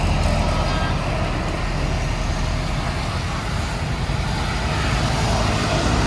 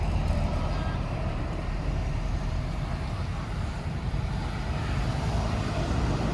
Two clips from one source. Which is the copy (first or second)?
second